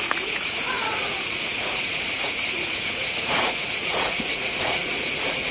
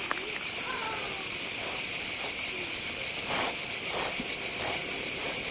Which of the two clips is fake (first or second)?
first